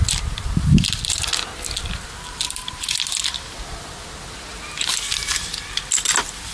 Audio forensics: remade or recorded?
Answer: recorded